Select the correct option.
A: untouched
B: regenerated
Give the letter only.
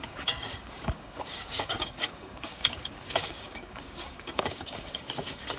B